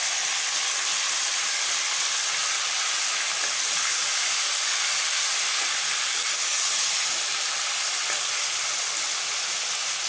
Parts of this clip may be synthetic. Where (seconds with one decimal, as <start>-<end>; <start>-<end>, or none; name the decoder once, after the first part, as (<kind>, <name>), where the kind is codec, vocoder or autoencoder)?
none